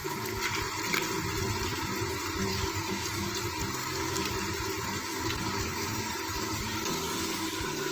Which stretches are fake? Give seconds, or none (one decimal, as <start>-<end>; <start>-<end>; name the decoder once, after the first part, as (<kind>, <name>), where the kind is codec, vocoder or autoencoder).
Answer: 2.5-3.3 (codec, DAC); 3.8-4.3; 5.0-7.9